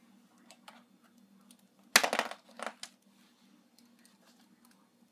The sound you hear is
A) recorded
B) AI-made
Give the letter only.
A